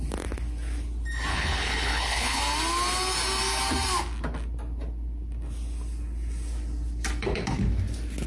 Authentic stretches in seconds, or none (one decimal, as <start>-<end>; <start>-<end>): 0.0-1.3; 2.4-8.3